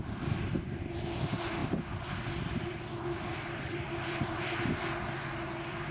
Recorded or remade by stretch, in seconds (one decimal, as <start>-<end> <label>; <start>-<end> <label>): 0.0-1.6 recorded; 1.6-2.8 remade; 2.8-3.3 recorded; 3.3-4.4 remade; 4.4-5.9 recorded